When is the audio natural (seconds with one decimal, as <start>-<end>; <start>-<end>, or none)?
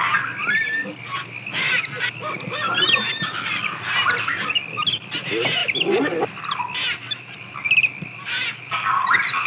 0.0-9.5